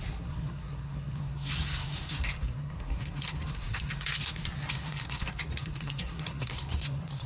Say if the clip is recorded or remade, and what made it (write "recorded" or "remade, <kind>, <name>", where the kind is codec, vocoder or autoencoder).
remade, codec, SNAC